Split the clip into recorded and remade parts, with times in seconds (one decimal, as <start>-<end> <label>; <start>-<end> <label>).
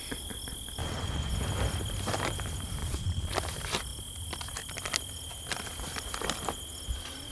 0.0-0.8 recorded; 0.8-1.3 remade; 1.3-2.8 recorded; 2.8-3.3 remade; 3.3-7.3 recorded